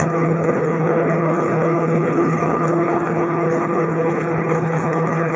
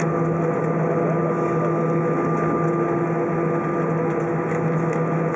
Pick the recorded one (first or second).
second